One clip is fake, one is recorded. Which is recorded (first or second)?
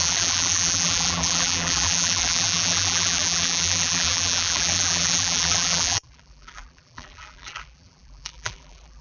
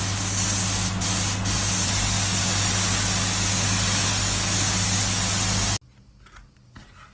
second